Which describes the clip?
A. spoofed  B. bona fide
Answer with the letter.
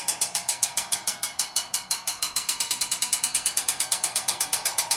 A